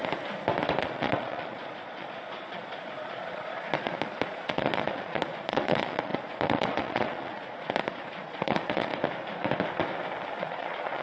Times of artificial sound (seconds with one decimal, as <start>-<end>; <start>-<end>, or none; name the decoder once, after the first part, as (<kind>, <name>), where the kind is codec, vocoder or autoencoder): 0.8-8.9 (vocoder, Vocos); 10.4-11.0